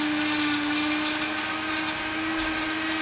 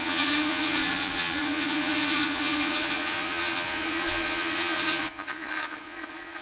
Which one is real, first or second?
first